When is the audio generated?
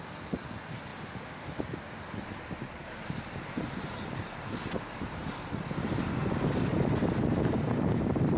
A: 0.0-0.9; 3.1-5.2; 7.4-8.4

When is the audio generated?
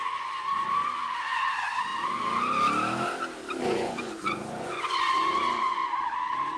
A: 0.0-1.9; 3.6-5.8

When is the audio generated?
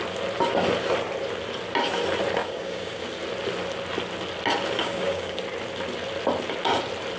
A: 2.4-3.0; 4.8-5.4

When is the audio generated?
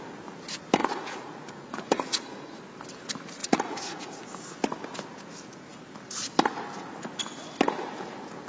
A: 0.8-2.6; 3.4-4.2